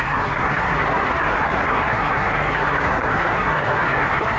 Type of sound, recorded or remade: remade